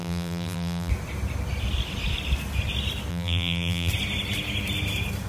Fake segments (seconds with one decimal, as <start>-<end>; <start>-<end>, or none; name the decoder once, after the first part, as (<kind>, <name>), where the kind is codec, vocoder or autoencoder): 0.0-0.9 (vocoder, BigVGAN v2); 3.1-3.9

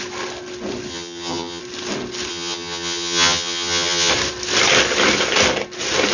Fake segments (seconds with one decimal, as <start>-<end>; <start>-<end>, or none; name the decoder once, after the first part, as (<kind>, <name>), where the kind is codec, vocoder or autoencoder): 0.9-1.6 (vocoder, HiFi-GAN); 2.3-4.1

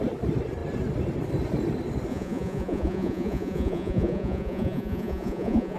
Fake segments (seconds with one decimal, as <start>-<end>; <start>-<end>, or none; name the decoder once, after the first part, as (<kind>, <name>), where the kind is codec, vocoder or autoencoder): 2.1-5.8 (vocoder, Vocos)

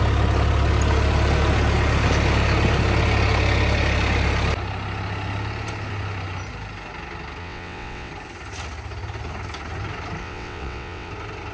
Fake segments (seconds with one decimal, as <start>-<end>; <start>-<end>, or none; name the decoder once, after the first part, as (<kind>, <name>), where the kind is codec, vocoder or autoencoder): 7.4-8.1 (vocoder, WaveNeXt); 10.2-11.1

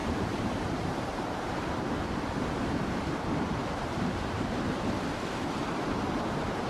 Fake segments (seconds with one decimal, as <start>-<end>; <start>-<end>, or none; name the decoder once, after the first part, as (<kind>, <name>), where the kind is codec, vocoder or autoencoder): 0.0-1.7 (vocoder, BigVGAN v2); 3.6-4.8

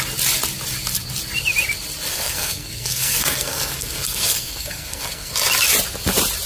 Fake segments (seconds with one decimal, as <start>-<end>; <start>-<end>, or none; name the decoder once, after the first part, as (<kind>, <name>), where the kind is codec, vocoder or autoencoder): 2.1-5.3 (codec, SNAC)

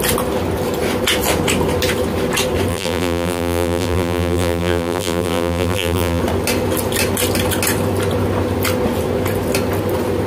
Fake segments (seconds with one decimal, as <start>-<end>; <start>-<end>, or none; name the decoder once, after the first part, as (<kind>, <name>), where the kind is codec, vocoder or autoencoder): 2.7-6.2 (vocoder, BigVGAN v2)